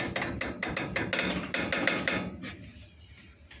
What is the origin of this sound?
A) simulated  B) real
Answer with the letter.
B